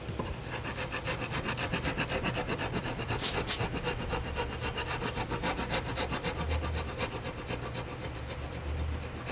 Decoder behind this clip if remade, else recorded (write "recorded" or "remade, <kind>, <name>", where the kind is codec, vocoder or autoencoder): recorded